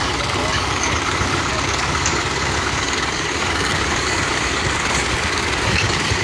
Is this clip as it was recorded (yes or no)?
no